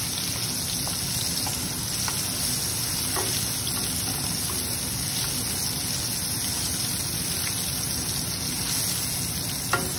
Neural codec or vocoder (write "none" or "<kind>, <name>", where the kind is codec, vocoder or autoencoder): none